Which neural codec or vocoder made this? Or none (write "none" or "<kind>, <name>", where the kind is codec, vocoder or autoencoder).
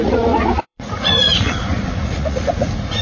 vocoder, Vocos